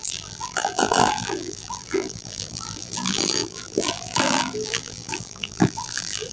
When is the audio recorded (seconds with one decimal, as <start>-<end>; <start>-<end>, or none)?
none